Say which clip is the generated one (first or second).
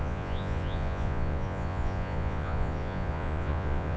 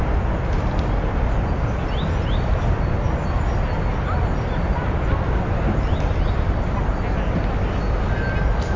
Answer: first